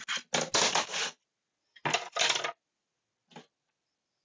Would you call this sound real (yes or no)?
yes